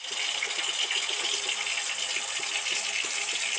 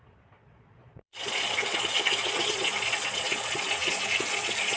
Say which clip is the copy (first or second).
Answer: second